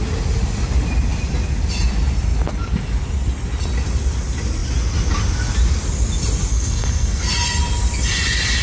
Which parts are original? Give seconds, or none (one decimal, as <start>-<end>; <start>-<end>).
0.0-6.5; 7.2-8.6